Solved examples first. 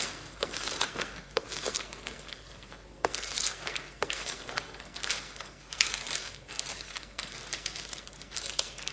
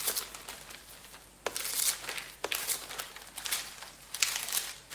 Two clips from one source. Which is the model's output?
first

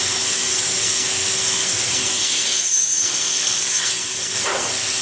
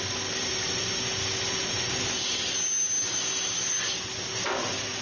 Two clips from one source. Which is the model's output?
first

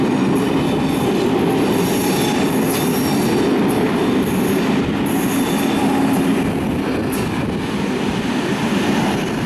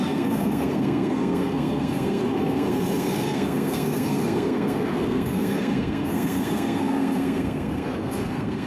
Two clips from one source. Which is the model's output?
second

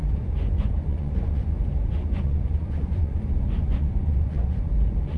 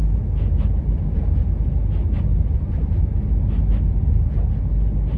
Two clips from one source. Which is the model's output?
first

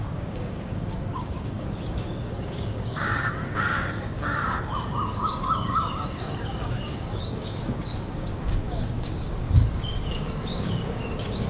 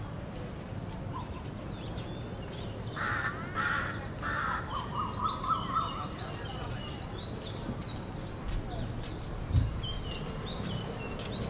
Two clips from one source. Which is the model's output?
first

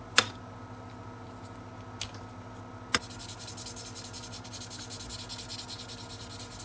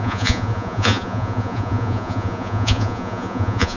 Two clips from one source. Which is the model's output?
second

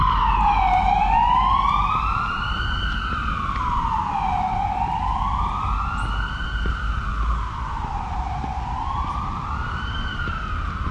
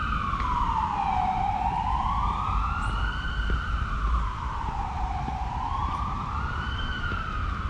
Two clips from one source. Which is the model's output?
second